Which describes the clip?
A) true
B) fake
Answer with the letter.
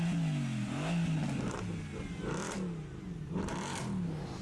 A